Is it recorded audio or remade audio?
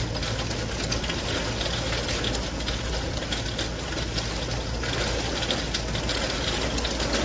recorded